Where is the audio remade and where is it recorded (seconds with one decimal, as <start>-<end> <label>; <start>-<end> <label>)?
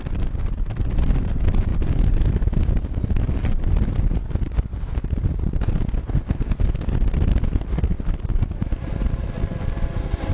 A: 0.0-1.7 remade; 1.7-3.5 recorded; 3.5-4.2 remade; 4.2-6.0 recorded; 6.0-10.3 remade